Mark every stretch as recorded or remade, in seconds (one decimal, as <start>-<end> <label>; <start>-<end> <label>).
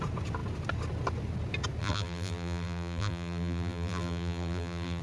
0.0-1.8 recorded; 1.8-5.0 remade